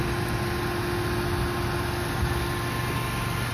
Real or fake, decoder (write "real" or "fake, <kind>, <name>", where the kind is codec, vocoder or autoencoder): real